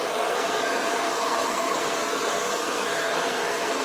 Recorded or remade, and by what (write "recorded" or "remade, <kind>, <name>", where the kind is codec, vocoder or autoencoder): remade, codec, SNAC